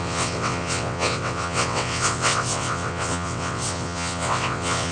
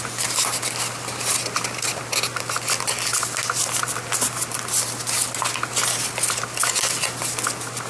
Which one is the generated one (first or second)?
first